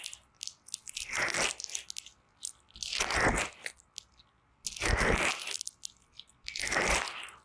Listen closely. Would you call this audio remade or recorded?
recorded